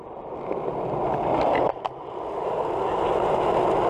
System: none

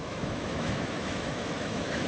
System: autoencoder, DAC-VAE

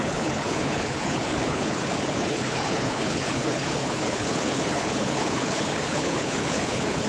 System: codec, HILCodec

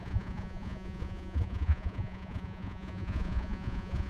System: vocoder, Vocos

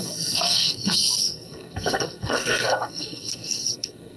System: codec, SNAC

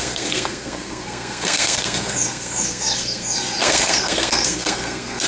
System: codec, SNAC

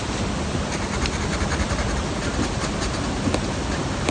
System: none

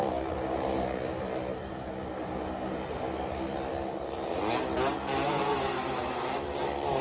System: none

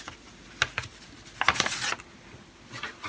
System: none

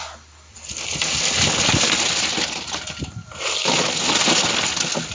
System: none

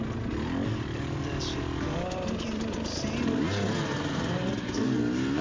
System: none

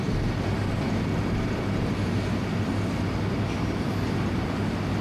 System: none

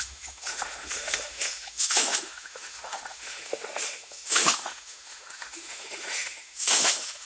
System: autoencoder, DAC-VAE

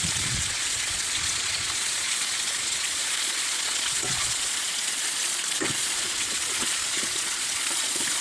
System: vocoder, Vocos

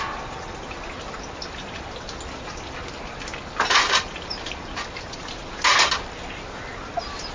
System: none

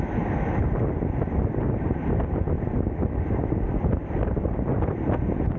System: none